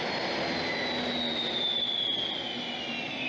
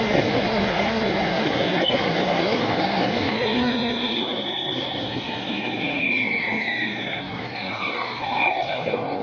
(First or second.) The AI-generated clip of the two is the second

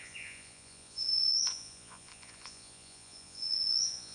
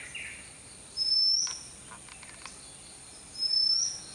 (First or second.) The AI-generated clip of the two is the first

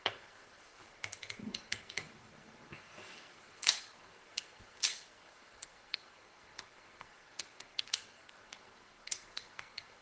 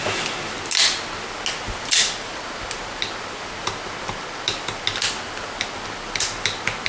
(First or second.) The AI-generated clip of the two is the first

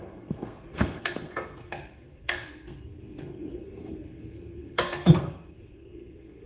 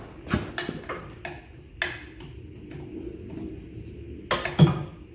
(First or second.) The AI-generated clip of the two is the first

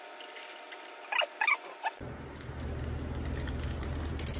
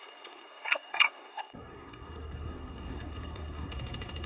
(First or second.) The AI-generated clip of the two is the second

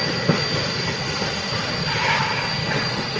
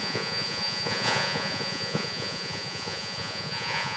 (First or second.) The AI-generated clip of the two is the second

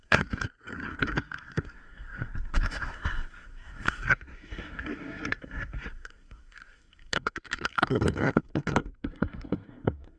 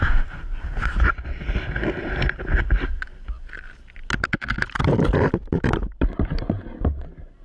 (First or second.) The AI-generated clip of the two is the first